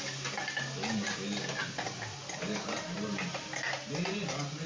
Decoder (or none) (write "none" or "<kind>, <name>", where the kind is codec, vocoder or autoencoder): none